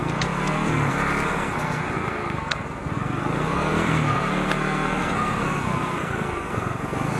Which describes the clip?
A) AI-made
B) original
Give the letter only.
A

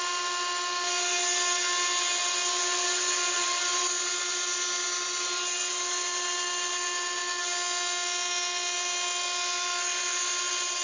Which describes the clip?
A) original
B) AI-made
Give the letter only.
A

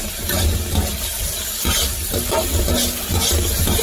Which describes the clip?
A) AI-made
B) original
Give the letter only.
B